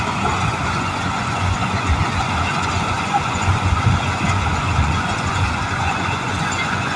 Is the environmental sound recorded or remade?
remade